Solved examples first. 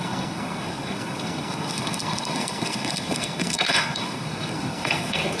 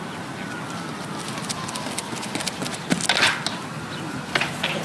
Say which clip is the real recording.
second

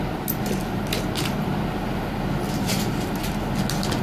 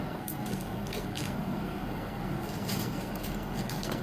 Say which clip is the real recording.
first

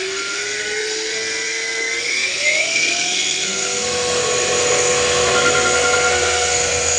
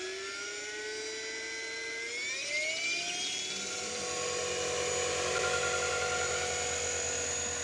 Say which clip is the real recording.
second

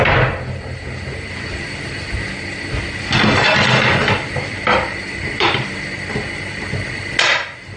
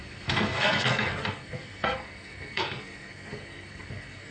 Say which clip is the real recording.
first